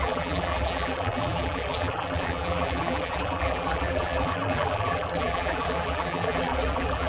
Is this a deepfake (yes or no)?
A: yes